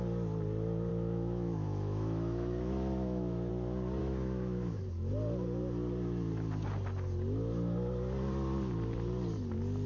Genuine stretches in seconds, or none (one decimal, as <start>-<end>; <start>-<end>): 0.0-0.9; 3.5-4.0; 5.1-9.9